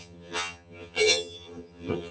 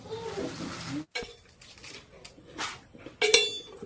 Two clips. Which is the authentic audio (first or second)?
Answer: second